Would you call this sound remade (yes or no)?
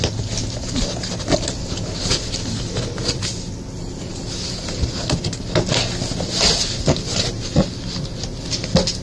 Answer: no